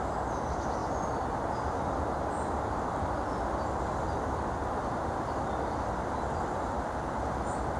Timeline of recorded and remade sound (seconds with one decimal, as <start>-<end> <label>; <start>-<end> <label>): 0.0-7.8 recorded